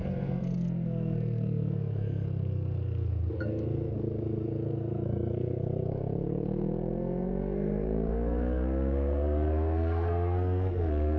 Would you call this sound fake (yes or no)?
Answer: yes